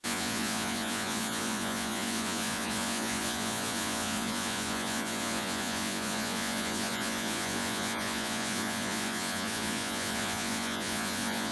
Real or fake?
fake